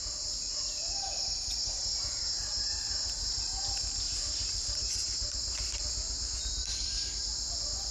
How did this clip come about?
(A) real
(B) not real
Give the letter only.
A